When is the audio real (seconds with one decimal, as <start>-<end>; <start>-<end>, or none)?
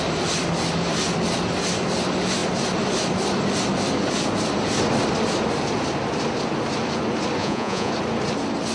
0.0-7.4; 7.9-8.7